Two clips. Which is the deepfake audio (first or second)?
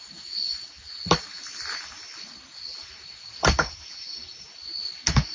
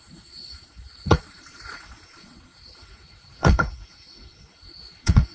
second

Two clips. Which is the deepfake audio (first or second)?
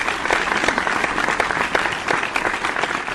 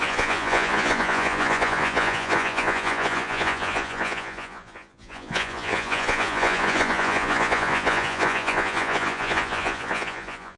second